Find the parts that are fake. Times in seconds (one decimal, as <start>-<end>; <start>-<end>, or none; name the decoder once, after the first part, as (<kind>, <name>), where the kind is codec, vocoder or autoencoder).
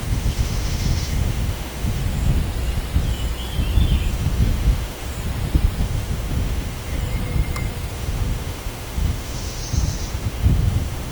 0.0-2.0 (autoencoder, DAC-VAE); 4.1-5.1; 5.8-7.0; 7.9-9.6; 10.1-11.1